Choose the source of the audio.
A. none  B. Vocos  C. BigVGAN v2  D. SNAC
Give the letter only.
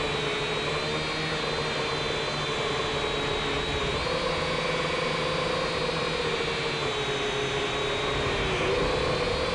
A